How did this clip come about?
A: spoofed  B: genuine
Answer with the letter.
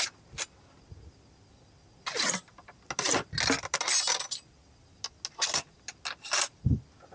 B